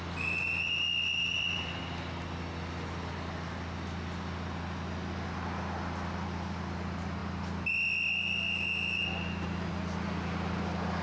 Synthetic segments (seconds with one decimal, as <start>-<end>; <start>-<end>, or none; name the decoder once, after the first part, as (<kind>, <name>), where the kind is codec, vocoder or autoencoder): 1.2-1.8 (vocoder, BigVGAN v2)

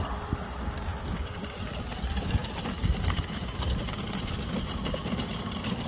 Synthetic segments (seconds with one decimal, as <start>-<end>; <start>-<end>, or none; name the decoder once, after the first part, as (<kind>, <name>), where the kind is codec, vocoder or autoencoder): none

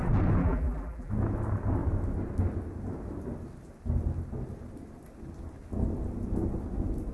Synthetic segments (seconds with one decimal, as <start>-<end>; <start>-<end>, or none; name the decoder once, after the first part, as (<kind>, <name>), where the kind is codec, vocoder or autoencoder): 0.4-1.1 (vocoder, BigVGAN v2)

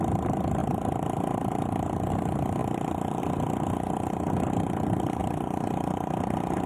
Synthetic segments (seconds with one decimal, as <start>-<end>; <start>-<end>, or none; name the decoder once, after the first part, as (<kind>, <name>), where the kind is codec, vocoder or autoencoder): 0.6-2.1 (vocoder, BigVGAN v2); 5.2-6.7